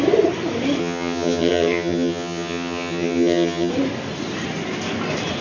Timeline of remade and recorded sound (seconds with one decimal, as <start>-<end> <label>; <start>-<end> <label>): 0.0-0.8 recorded; 0.8-3.7 remade; 3.7-5.4 recorded